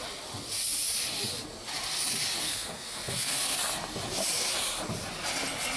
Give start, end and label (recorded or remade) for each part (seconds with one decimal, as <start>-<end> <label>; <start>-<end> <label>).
0.0-2.4 recorded; 2.4-3.6 remade; 3.6-5.8 recorded